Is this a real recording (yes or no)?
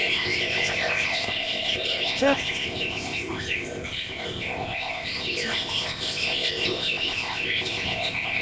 no